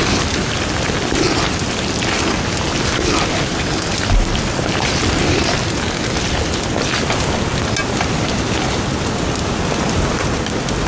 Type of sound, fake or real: real